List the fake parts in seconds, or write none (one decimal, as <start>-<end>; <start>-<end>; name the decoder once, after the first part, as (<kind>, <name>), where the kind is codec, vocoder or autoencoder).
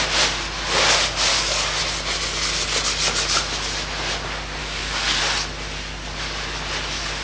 1.3-1.8 (codec, DAC); 4.6-5.2